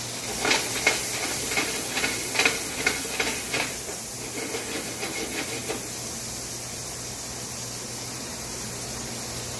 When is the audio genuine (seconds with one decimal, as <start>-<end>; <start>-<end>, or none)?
0.0-9.6